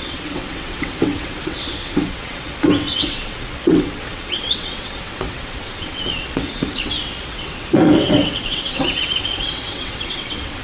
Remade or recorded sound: remade